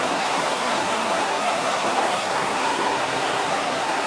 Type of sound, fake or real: fake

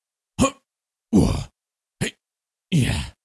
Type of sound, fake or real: real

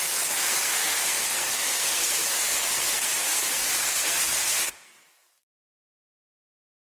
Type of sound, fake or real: fake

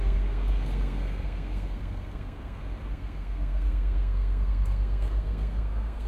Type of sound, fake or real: fake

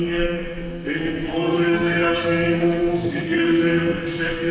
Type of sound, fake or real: fake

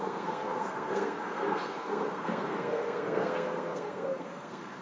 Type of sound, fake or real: fake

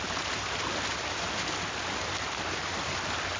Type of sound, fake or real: real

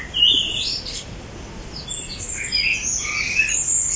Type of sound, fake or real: real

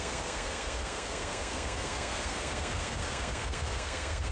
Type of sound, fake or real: fake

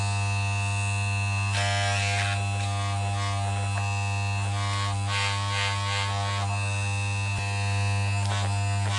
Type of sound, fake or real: real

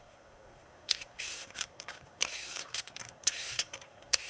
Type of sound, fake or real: fake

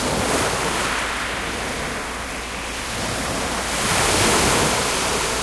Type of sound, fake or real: real